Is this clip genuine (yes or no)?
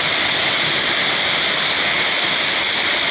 yes